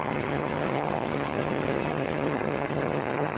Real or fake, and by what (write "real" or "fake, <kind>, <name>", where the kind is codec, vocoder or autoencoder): fake, vocoder, HiFi-GAN